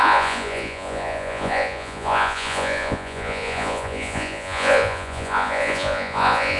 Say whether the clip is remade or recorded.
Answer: remade